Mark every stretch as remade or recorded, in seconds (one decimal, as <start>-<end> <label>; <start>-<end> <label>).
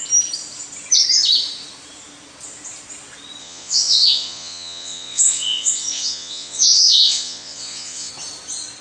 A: 0.0-3.4 recorded; 3.4-8.1 remade; 8.1-8.8 recorded